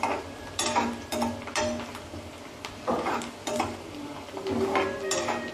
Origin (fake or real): real